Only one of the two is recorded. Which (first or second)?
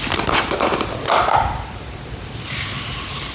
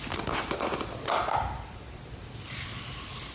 second